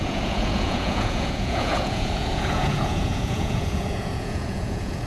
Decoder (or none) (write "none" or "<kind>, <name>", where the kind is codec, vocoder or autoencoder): vocoder, Vocos